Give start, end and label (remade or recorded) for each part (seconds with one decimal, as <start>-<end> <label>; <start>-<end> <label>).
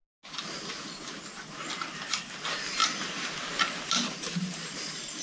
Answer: 0.0-2.8 recorded; 2.8-3.3 remade; 3.3-5.2 recorded